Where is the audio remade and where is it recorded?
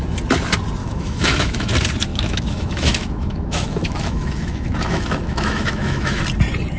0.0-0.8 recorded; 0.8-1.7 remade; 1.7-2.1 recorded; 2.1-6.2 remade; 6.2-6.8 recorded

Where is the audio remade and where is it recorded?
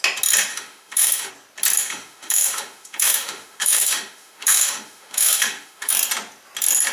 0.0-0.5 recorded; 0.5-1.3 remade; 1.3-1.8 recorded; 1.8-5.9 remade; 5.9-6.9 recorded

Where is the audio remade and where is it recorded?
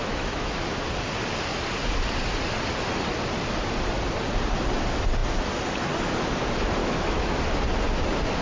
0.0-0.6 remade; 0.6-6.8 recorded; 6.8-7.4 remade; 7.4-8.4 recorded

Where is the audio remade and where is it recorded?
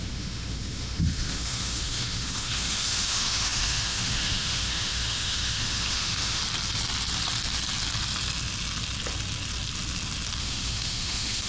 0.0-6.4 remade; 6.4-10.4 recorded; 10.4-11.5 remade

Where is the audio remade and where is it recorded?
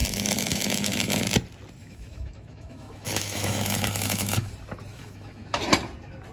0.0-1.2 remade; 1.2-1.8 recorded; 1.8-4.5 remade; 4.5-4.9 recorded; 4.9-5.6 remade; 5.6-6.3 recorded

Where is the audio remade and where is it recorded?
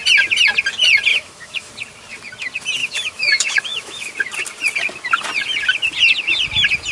0.0-1.1 recorded; 1.1-1.7 remade; 1.7-2.8 recorded; 2.8-4.1 remade; 4.1-6.9 recorded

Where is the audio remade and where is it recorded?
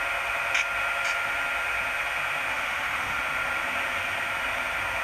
0.0-2.5 recorded; 2.5-3.2 remade; 3.2-5.0 recorded